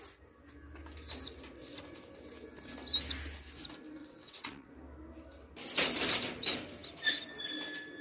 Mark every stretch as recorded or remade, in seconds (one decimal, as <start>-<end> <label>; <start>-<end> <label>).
0.0-4.0 recorded; 4.0-4.7 remade; 4.7-8.0 recorded